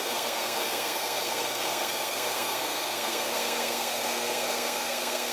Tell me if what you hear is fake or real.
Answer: fake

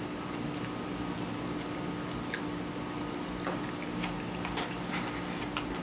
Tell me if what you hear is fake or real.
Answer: real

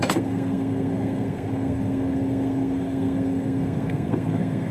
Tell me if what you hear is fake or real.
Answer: fake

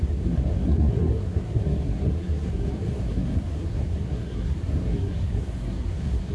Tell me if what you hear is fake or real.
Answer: fake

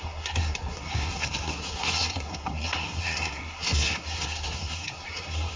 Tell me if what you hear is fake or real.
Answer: fake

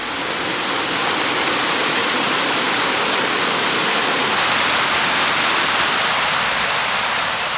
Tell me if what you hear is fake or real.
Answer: real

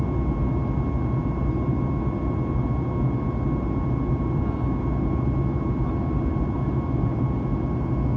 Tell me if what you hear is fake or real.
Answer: real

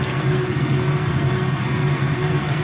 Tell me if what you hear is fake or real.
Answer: fake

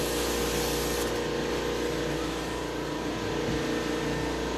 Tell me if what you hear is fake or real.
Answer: real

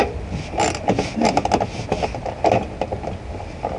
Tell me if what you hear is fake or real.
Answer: real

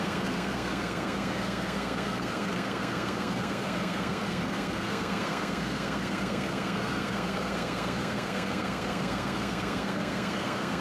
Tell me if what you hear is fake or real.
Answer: fake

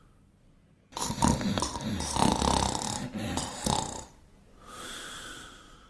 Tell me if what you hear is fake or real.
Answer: real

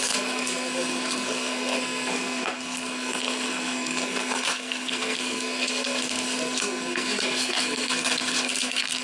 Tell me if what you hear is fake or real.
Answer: fake